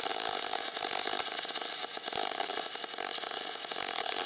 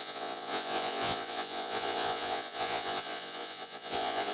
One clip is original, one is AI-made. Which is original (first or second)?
first